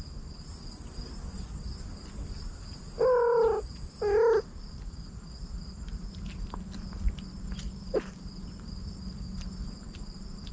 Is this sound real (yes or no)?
yes